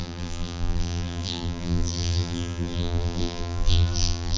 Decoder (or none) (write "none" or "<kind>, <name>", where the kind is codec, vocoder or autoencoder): vocoder, BigVGAN v2